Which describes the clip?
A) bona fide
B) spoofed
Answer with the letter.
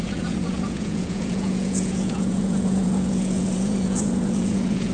B